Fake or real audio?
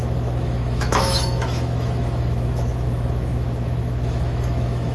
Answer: fake